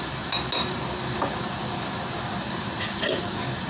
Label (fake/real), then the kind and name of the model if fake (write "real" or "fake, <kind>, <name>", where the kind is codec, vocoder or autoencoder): real